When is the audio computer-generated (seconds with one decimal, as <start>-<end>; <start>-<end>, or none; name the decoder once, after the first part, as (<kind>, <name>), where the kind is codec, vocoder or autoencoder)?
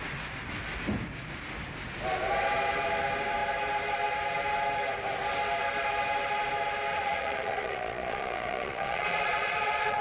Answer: 6.9-10.0 (vocoder, Vocos)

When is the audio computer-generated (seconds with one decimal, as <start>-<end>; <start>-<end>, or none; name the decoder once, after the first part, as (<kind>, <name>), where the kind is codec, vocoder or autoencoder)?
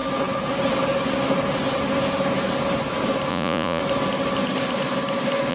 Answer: 3.3-3.8 (vocoder, Vocos)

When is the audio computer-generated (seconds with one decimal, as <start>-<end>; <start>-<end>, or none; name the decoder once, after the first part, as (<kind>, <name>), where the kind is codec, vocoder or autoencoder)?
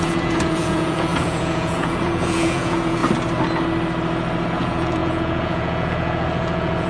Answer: 0.0-3.0 (vocoder, Vocos); 4.5-6.9